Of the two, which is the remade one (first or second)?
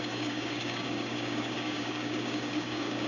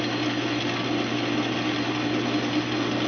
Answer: first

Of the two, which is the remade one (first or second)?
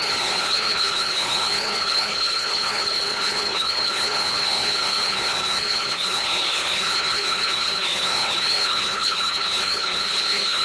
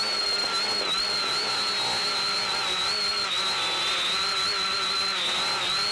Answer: first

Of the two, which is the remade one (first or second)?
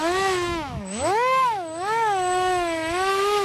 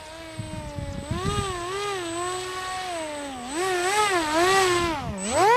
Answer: first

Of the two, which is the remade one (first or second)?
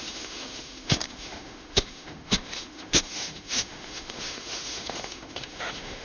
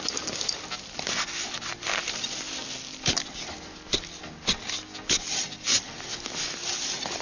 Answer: first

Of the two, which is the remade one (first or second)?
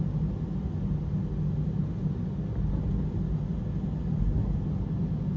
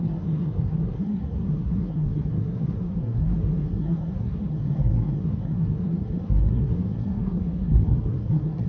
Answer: second